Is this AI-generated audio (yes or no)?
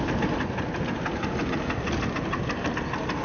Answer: no